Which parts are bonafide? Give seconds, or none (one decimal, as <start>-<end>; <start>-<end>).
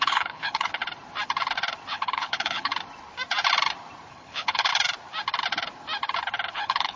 0.8-1.9; 2.7-4.1; 4.7-6.5